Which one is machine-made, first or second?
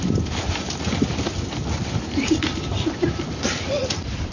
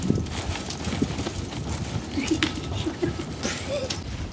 first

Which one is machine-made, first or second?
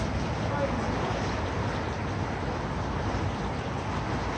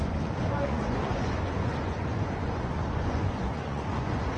second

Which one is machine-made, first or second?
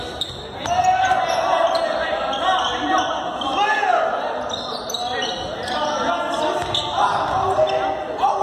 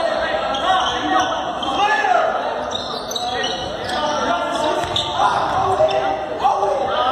second